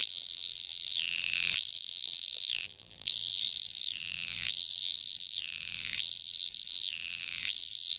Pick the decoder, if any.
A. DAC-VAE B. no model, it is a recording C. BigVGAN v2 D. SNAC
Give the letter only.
C